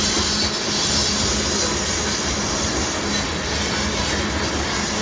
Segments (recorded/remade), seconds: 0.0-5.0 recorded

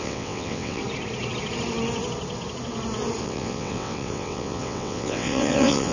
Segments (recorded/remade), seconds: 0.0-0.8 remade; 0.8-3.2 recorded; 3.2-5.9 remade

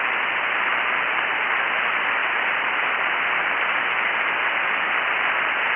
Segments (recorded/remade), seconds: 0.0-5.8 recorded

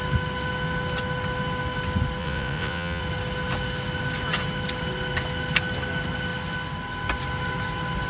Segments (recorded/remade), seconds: 0.0-2.2 recorded; 2.2-3.0 remade; 3.0-8.1 recorded

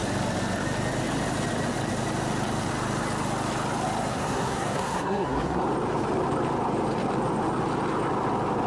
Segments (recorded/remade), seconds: 0.0-4.1 recorded; 4.1-5.6 remade; 5.6-8.7 recorded

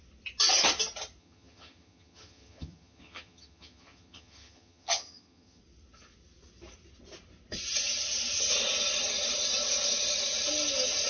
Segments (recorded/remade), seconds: 0.0-1.2 recorded; 1.2-5.6 remade; 5.6-11.1 recorded

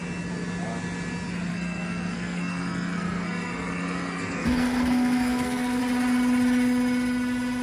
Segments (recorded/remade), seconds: 0.0-1.5 recorded; 1.5-5.8 remade; 5.8-7.6 recorded

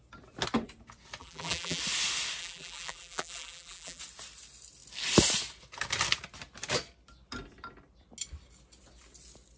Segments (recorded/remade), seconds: 0.0-1.2 recorded; 1.2-1.8 remade; 1.8-2.4 recorded; 2.4-4.0 remade; 4.0-9.6 recorded